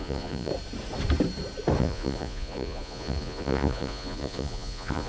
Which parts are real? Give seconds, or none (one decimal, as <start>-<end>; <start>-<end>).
0.5-1.8